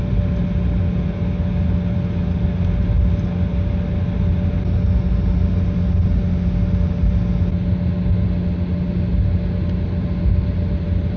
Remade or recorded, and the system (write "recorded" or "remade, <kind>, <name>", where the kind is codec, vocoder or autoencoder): recorded